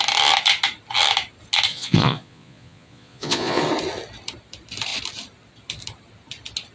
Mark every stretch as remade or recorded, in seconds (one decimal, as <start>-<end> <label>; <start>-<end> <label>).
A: 0.0-1.7 recorded; 1.7-3.6 remade; 3.6-6.7 recorded